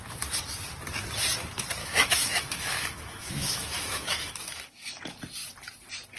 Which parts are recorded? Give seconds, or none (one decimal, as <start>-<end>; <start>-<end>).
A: 0.0-1.8; 5.0-6.2